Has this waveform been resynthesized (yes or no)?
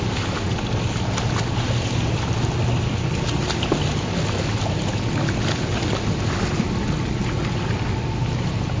no